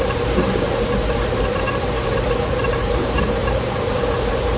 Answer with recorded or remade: remade